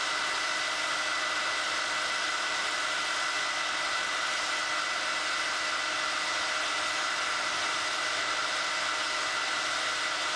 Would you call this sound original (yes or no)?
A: yes